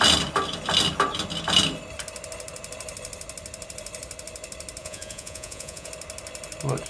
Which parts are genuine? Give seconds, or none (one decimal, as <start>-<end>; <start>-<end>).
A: 0.0-4.8; 5.9-6.9